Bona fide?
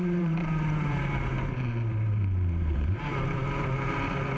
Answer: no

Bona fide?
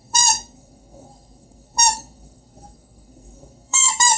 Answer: no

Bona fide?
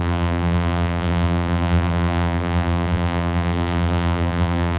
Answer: no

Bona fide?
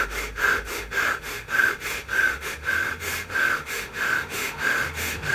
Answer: no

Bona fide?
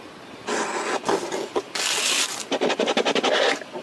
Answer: yes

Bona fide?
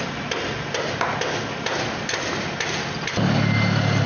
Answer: yes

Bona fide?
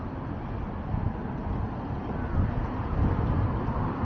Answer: yes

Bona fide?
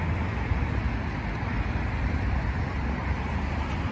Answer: yes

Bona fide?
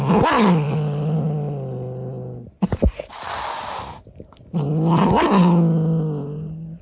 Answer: yes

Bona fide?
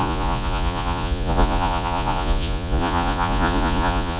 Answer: no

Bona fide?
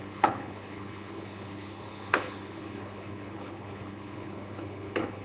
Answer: no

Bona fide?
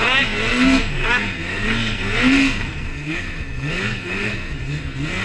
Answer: no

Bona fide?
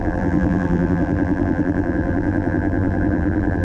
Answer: no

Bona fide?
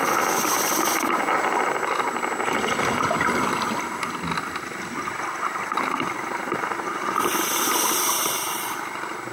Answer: yes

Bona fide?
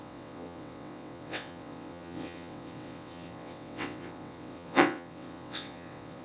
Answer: no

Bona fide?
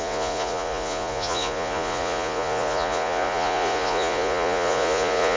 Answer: no